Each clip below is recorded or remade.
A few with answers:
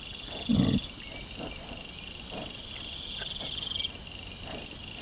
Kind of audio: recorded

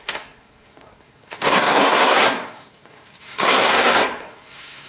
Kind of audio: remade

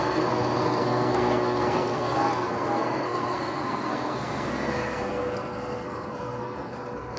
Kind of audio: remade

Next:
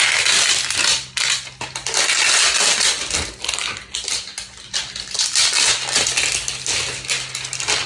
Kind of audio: recorded